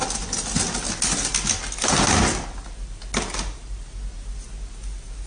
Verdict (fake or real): real